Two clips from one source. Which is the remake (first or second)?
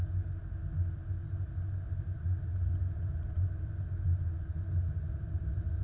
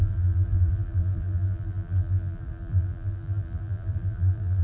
second